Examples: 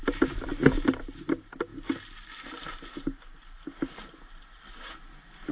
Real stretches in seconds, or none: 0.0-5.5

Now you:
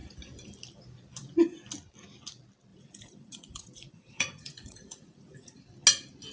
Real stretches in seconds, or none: 0.0-2.7; 5.6-6.3

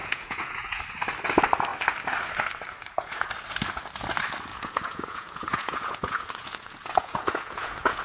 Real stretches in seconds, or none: 0.8-2.8; 3.3-4.5

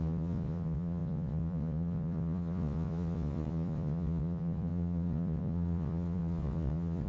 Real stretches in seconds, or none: none

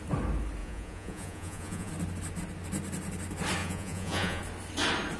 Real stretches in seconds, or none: 0.0-0.6; 1.9-3.6; 4.4-5.2

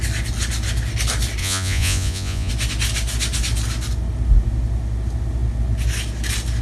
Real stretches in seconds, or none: 0.0-1.4; 2.5-6.6

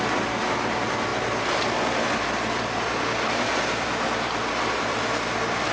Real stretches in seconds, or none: 0.0-5.7